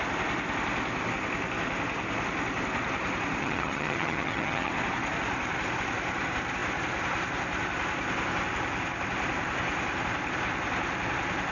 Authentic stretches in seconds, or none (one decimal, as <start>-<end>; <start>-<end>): 0.0-3.4; 4.7-11.5